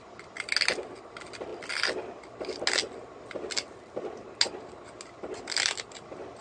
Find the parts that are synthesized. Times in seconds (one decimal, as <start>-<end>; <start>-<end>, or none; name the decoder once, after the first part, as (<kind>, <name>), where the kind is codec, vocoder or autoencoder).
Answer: none